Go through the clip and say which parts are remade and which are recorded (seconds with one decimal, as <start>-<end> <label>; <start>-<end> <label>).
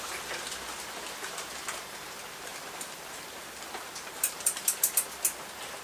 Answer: 0.0-5.8 recorded